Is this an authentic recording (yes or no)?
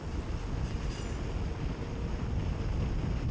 yes